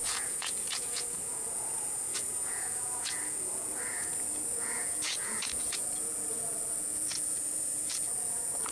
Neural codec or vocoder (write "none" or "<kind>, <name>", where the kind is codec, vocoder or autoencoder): vocoder, Vocos